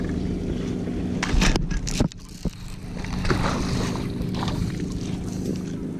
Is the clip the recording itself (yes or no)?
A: yes